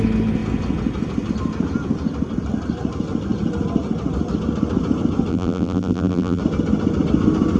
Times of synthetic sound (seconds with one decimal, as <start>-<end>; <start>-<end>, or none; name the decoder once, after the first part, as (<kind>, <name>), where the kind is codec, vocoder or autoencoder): 5.3-6.4 (vocoder, BigVGAN v2)